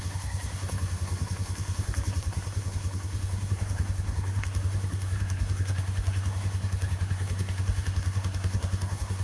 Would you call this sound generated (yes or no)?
yes